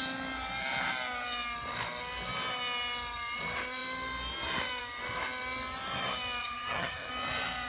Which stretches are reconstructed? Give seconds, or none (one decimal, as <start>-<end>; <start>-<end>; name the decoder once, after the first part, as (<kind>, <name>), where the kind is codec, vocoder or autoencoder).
6.4-7.1 (vocoder, HiFi-GAN)